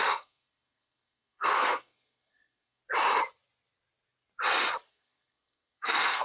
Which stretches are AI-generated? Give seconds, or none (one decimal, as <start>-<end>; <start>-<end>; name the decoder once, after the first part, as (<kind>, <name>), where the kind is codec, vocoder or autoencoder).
0.0-2.8 (codec, SNAC); 4.9-6.2